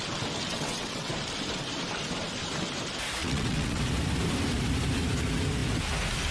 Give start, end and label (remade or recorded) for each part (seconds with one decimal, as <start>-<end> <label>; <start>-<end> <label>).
0.0-0.5 recorded; 0.5-1.1 remade; 1.1-3.2 recorded; 3.2-3.8 remade; 3.8-6.3 recorded